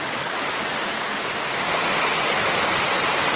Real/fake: real